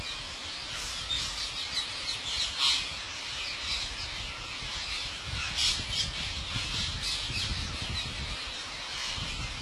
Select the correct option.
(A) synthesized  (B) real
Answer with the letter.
B